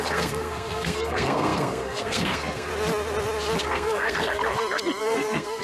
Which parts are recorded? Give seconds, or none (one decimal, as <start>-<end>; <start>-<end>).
2.7-3.6; 4.4-5.0